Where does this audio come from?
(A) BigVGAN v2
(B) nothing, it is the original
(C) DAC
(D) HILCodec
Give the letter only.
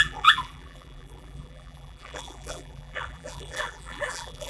A